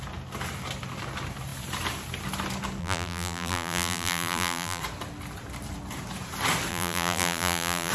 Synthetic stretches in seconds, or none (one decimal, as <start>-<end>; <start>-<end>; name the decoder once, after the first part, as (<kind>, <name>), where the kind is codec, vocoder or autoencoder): 2.8-4.8 (vocoder, BigVGAN v2); 6.7-7.9